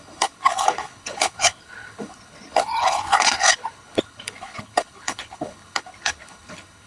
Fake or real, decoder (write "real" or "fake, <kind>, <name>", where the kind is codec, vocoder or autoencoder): fake, codec, HILCodec